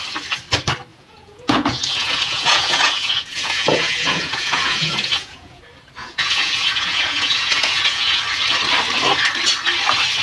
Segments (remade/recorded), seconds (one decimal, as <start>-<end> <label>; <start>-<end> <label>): 0.0-0.9 recorded; 0.9-5.6 remade; 5.6-6.0 recorded; 6.0-8.2 remade; 8.2-10.2 recorded